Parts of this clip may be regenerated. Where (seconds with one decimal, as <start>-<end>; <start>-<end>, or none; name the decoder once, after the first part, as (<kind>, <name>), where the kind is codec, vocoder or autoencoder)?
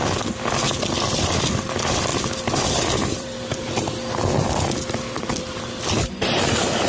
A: 2.1-6.1 (vocoder, BigVGAN v2)